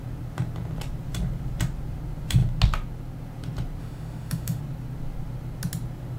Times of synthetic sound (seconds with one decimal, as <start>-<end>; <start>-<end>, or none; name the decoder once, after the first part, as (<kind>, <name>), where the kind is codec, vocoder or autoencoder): 3.8-4.6 (autoencoder, DAC-VAE)